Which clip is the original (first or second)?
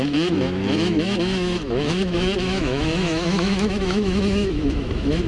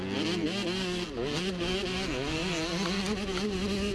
second